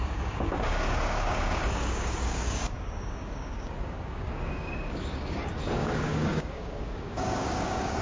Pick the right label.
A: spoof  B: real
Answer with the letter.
A